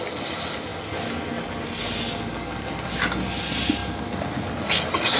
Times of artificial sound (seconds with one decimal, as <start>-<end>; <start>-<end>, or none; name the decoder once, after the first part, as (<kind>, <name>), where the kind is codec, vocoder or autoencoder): none